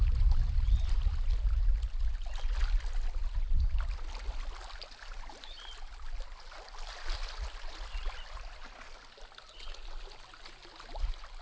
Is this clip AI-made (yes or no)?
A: no